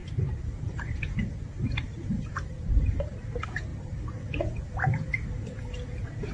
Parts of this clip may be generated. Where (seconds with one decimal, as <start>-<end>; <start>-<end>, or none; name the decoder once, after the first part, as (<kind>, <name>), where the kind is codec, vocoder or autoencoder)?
0.0-2.7 (vocoder, BigVGAN v2); 3.7-4.7